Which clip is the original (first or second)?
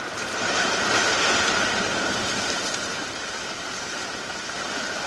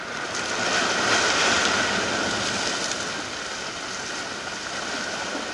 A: second